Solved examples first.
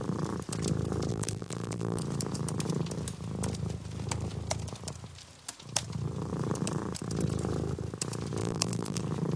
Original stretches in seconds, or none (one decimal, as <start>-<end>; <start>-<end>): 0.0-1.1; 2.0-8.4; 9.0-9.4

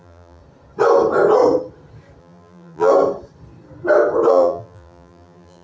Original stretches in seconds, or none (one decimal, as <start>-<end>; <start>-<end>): 0.4-2.2; 2.9-4.3

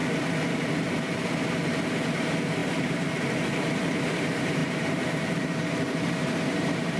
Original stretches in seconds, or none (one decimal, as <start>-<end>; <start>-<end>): 0.0-2.1

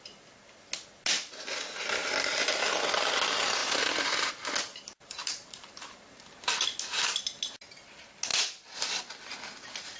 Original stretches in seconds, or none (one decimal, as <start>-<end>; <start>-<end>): 0.0-4.7; 6.5-10.0